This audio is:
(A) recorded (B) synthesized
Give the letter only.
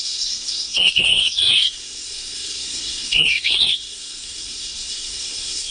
B